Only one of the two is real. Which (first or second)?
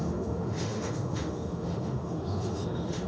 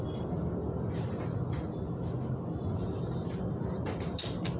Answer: second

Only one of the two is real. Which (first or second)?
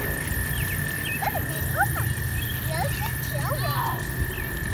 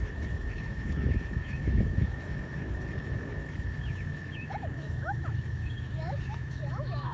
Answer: first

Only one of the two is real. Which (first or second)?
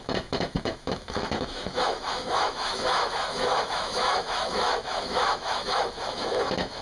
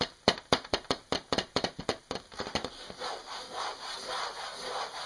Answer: second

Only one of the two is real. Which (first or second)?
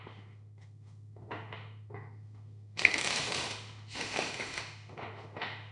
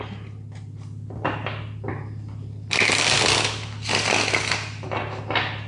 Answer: second